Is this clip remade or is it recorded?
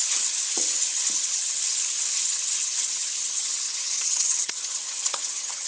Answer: remade